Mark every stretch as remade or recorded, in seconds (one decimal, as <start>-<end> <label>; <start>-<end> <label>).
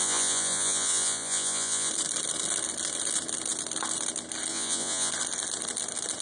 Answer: 0.0-1.9 remade; 1.9-4.5 recorded; 4.5-5.1 remade; 5.1-6.2 recorded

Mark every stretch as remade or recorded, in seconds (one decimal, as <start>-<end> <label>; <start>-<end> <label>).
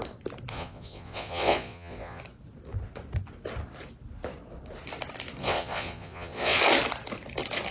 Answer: 0.0-0.5 recorded; 0.5-2.2 remade; 2.2-5.4 recorded; 5.4-6.6 remade; 6.6-7.7 recorded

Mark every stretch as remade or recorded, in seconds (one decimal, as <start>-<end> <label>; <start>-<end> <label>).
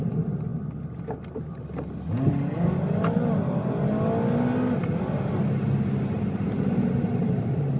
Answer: 0.0-7.8 recorded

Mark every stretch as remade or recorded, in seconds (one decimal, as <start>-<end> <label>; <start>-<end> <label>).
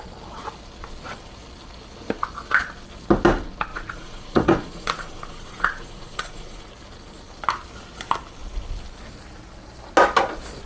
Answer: 0.0-3.7 recorded; 3.7-6.7 remade; 6.7-10.7 recorded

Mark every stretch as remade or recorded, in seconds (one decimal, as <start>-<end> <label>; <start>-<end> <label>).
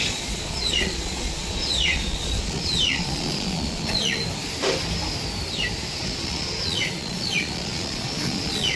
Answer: 0.0-4.2 remade; 4.2-6.0 recorded; 6.0-8.7 remade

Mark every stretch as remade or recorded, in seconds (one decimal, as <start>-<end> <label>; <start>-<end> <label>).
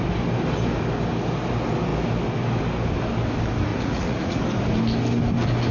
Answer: 0.0-3.7 recorded; 3.7-4.4 remade; 4.4-5.7 recorded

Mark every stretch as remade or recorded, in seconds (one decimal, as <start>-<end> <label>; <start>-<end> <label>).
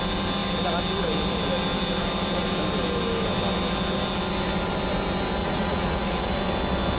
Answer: 0.0-5.4 recorded; 5.4-6.4 remade; 6.4-7.0 recorded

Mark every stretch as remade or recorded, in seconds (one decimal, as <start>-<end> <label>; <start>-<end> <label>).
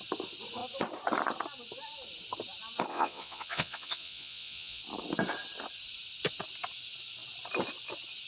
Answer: 0.0-2.9 recorded; 2.9-4.8 remade; 4.8-8.3 recorded